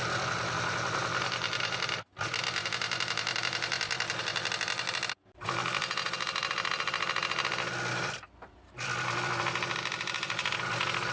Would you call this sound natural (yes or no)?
yes